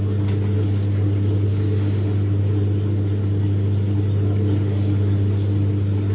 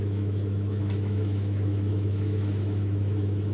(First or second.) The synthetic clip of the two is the second